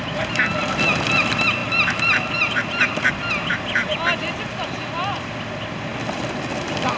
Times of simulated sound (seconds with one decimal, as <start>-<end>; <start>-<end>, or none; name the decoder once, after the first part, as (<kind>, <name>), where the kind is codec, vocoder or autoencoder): none